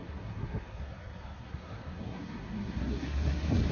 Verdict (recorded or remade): remade